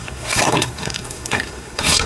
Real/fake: fake